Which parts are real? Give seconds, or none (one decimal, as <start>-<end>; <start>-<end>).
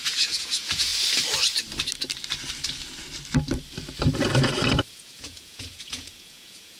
0.9-4.9